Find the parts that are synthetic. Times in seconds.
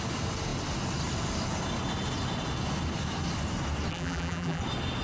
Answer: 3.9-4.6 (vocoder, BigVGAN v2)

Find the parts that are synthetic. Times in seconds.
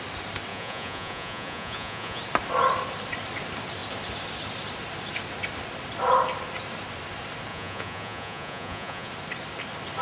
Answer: 0.5-2.2 (vocoder, Vocos); 7.5-9.1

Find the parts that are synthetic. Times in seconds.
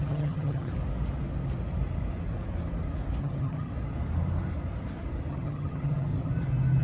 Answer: 0.0-0.7 (vocoder, HiFi-GAN); 3.2-3.7; 5.3-6.1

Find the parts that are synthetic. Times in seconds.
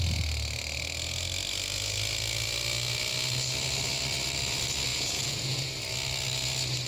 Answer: 4.9-5.7 (vocoder, Vocos)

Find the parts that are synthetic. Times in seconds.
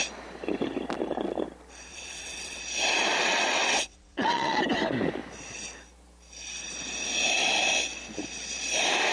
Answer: 1.9-2.6 (vocoder, WaveNeXt); 3.3-4.6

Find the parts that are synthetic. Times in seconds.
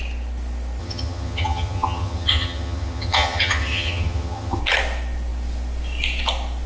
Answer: 0.8-4.6 (vocoder, HiFi-GAN)